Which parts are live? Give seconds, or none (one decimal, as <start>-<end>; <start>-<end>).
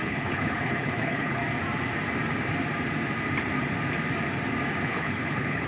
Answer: 1.4-4.8